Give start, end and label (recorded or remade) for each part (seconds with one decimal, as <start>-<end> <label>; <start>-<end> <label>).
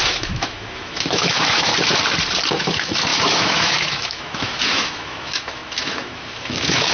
0.0-1.7 remade; 1.7-2.5 recorded; 2.5-6.9 remade